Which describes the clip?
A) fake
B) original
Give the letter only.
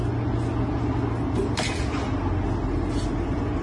B